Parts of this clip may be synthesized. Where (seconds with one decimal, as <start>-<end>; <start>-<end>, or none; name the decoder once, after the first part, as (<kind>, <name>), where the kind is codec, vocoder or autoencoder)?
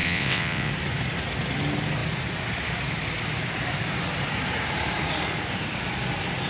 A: 0.0-0.7 (vocoder, WaveNeXt)